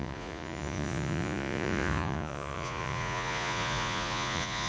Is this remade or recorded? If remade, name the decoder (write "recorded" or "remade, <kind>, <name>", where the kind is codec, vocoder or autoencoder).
remade, vocoder, Vocos